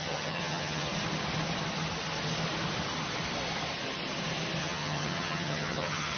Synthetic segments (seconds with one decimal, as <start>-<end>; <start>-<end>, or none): 0.0-0.9; 4.6-6.2